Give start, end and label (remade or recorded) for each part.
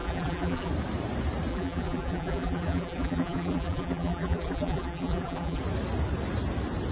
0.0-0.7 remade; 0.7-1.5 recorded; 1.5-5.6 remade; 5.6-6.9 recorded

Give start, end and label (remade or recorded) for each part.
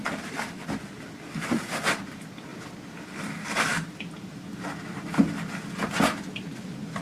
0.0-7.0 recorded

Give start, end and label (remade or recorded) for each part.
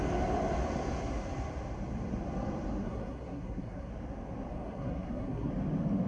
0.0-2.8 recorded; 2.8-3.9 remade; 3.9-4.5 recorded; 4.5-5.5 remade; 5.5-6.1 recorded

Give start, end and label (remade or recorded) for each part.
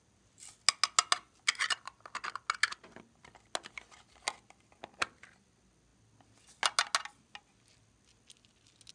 0.0-8.9 recorded